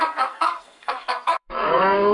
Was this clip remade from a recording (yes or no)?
yes